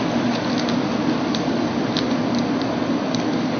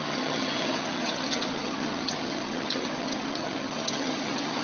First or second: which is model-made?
second